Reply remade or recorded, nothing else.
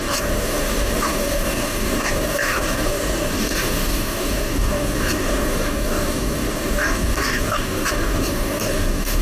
remade